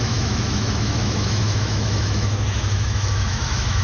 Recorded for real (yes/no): no